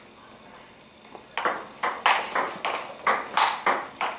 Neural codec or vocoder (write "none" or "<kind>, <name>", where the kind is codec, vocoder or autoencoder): none